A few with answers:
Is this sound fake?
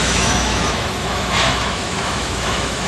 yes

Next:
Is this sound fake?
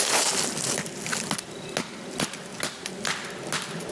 no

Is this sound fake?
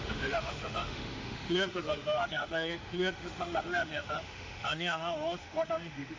yes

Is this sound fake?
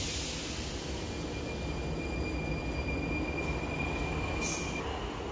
no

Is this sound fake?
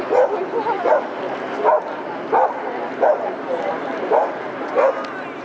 no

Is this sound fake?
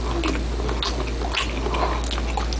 no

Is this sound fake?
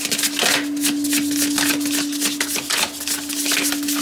no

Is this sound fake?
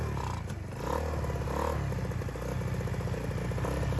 no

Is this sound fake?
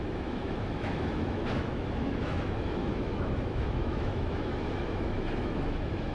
yes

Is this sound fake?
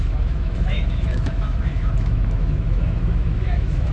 yes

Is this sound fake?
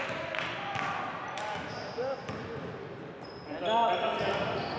no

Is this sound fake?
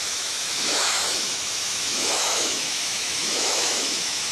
yes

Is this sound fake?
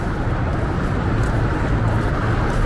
no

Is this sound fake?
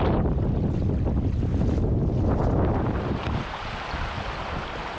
no